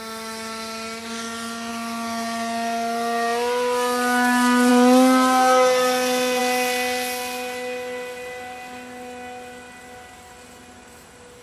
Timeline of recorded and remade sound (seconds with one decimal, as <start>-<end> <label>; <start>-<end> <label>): 0.0-11.4 recorded